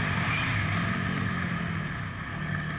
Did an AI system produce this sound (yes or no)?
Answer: no